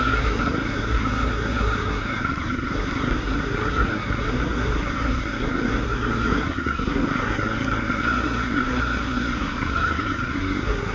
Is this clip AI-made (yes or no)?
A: yes